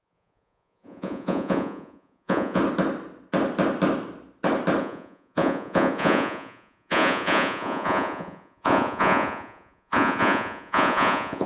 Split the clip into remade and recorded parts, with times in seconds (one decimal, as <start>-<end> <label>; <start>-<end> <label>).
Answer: 0.0-2.6 remade; 2.6-4.8 recorded; 4.8-11.5 remade